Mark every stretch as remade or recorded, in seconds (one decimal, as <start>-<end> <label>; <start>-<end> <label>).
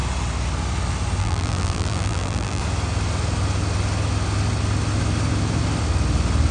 0.0-1.2 recorded; 1.2-2.6 remade; 2.6-6.5 recorded